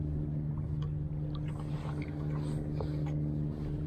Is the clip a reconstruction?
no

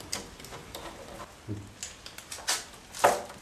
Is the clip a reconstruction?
no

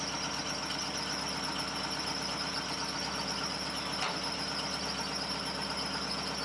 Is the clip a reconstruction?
no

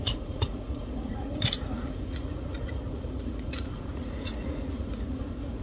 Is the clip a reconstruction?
yes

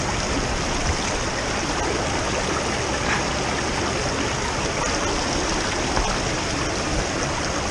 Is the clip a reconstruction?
no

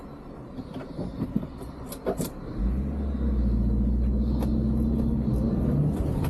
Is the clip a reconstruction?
no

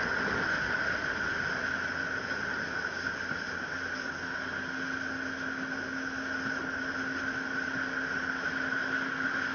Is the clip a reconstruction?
no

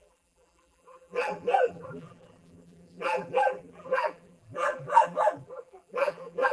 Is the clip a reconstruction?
yes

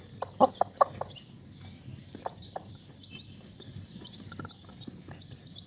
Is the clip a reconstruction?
yes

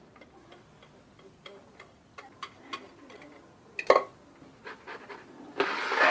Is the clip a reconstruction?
no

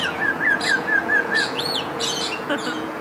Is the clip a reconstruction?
yes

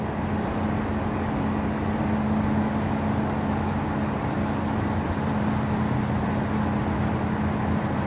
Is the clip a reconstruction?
no